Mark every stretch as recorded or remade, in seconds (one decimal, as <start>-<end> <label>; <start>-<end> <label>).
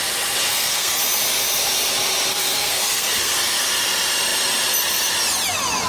0.0-0.5 recorded; 0.5-1.0 remade; 1.0-2.3 recorded; 2.3-3.3 remade; 3.3-5.9 recorded